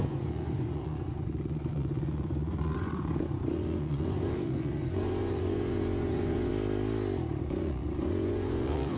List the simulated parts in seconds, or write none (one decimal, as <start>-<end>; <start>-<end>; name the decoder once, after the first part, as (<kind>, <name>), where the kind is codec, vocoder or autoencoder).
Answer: 0.0-6.5 (vocoder, Vocos); 7.4-9.0